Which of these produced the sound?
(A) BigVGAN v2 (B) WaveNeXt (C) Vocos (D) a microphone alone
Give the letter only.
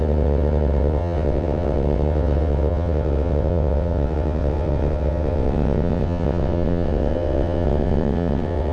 B